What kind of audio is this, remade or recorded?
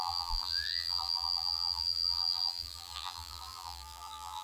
remade